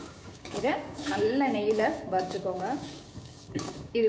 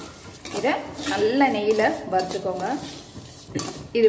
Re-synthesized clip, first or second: first